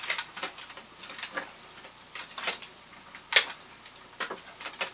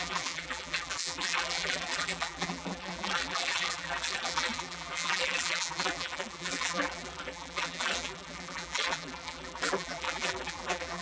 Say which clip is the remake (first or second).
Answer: second